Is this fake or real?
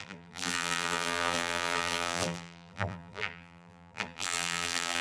fake